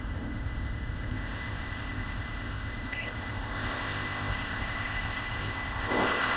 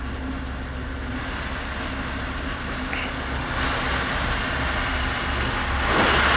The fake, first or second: first